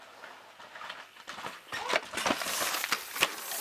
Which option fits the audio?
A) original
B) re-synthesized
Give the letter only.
A